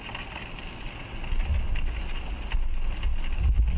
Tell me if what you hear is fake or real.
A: real